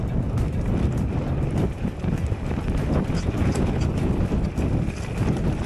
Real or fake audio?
real